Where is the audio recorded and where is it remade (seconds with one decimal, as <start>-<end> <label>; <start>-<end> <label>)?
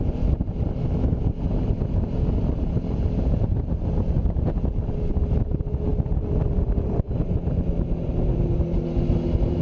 0.0-9.6 recorded